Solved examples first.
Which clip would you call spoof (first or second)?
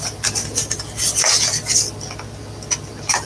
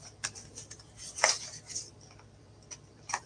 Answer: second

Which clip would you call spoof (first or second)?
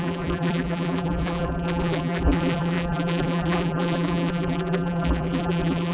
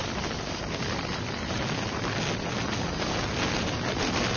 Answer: first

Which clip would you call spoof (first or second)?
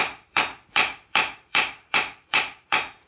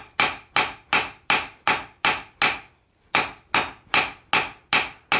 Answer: first